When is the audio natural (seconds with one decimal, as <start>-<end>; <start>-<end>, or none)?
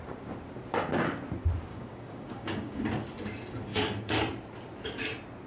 0.0-1.7; 2.8-3.7; 4.2-5.5